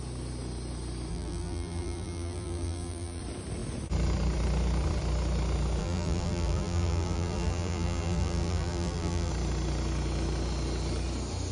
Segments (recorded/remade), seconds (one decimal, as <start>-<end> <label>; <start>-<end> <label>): 0.0-1.1 recorded; 1.1-3.2 remade; 3.2-5.8 recorded; 5.8-9.3 remade; 9.3-11.5 recorded